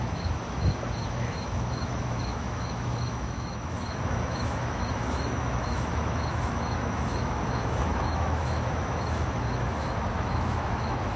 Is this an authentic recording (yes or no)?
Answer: no